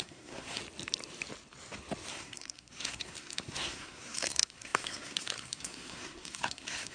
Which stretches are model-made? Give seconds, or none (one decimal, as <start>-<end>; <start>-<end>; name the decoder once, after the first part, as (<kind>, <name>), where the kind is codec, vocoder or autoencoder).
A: 0.0-0.6 (codec, SNAC); 2.1-6.9

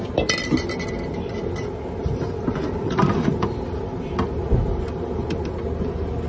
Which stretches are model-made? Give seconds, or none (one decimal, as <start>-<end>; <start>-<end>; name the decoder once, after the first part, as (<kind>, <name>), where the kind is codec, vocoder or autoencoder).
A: 2.0-5.5 (vocoder, BigVGAN v2)

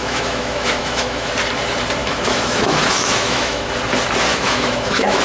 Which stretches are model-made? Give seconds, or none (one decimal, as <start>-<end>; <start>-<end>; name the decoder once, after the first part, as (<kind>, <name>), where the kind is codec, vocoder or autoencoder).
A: 0.0-1.3 (autoencoder, DAC-VAE); 2.0-3.7; 4.3-5.2